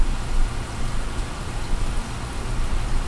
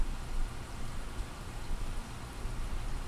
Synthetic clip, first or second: second